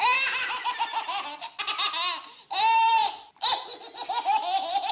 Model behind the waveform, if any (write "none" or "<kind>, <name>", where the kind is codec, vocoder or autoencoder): none